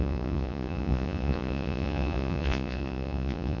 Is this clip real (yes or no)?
no